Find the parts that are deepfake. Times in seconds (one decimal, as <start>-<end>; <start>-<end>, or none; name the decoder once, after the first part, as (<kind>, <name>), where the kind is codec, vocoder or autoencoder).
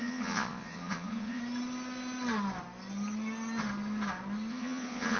0.0-1.4 (vocoder, Vocos); 4.5-5.2